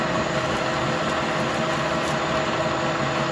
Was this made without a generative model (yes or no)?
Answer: yes